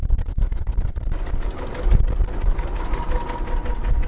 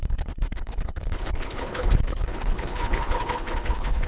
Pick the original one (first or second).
first